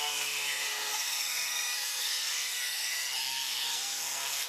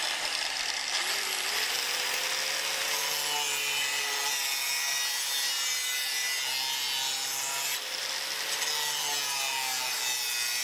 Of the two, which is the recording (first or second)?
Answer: second